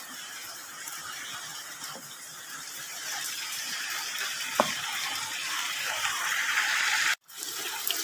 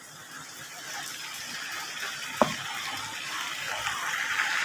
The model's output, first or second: first